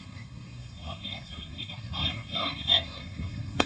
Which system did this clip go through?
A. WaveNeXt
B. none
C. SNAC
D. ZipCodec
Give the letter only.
C